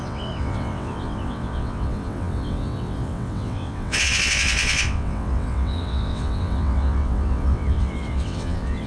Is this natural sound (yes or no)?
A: no